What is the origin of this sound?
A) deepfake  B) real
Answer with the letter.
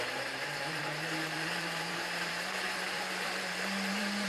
A